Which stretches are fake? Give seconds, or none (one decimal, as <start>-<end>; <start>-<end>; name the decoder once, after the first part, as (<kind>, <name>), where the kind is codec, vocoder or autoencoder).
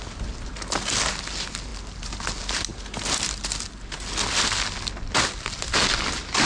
none